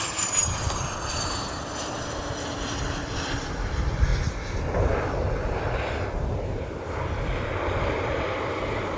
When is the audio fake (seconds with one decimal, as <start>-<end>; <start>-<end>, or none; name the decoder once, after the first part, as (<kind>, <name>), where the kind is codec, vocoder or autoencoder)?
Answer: 0.0-4.1 (vocoder, BigVGAN v2); 5.9-9.0